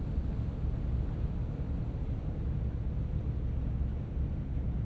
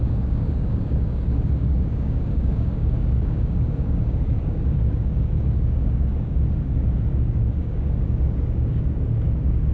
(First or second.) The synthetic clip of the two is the second